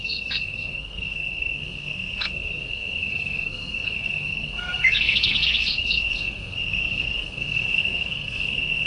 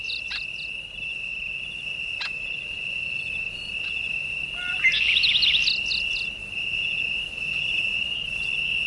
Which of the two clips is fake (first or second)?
first